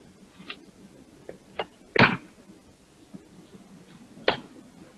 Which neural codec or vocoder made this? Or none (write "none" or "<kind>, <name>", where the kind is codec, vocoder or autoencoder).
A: none